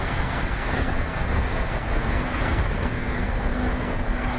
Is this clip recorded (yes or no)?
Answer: no